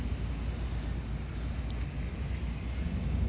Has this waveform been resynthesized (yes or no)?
no